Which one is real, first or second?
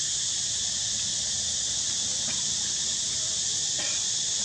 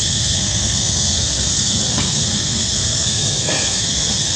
first